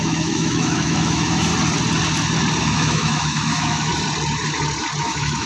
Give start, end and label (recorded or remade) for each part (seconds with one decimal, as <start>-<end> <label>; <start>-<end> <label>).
0.0-1.5 remade; 1.5-2.6 recorded; 2.6-3.9 remade; 3.9-5.0 recorded; 5.0-5.5 remade